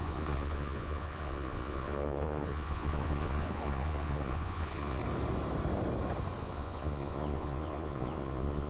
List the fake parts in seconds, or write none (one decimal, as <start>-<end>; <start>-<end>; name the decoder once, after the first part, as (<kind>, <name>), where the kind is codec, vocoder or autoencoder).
0.0-5.0 (vocoder, Vocos); 6.4-8.7

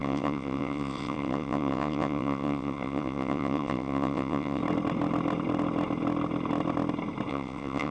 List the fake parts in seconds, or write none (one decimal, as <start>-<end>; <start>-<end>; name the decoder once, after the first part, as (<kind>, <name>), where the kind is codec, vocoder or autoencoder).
0.0-4.6 (vocoder, WaveNeXt); 7.3-7.9

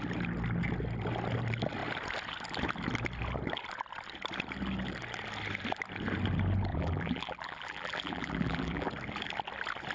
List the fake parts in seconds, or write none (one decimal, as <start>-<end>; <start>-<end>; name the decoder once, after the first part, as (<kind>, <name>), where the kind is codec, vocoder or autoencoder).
6.7-8.9 (vocoder, BigVGAN v2)

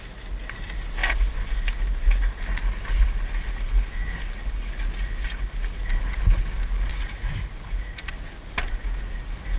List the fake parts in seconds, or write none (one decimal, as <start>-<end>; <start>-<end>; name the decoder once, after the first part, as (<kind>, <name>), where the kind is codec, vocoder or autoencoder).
6.9-8.1 (vocoder, Vocos)

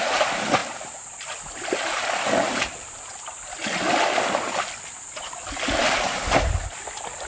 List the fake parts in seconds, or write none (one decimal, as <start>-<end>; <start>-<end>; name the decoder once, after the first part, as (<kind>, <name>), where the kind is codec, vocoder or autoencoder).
none

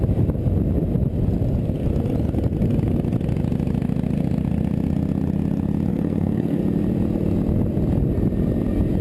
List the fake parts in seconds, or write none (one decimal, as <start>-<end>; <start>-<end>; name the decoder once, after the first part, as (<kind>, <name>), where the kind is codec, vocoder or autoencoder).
5.9-6.6 (codec, SNAC)

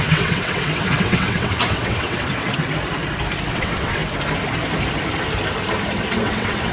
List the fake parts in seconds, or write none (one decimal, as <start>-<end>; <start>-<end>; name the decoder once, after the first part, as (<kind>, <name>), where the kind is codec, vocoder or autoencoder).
0.0-2.5 (vocoder, WaveNeXt); 3.5-4.0; 5.9-6.7

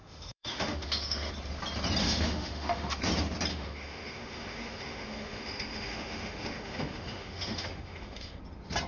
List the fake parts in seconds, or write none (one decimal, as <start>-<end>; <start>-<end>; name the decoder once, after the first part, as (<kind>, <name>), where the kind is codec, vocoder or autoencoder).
0.0-1.3 (autoencoder, DAC-VAE); 2.0-3.0; 3.5-8.4